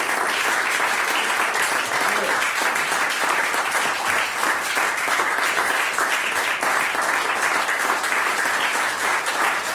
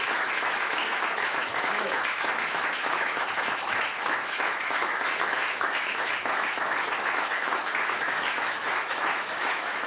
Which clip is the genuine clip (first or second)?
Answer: first